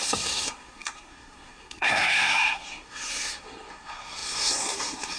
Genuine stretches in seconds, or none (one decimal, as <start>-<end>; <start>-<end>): none